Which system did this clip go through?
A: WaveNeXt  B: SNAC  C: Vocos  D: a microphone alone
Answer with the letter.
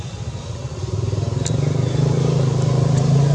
D